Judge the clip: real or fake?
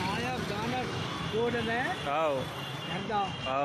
real